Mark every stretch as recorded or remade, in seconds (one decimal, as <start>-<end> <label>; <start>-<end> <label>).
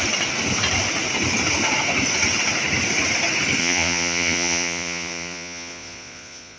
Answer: 0.0-3.6 recorded; 3.6-6.6 remade